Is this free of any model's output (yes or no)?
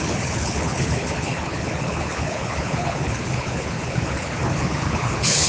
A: no